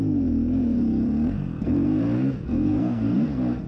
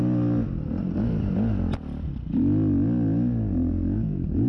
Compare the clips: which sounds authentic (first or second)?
second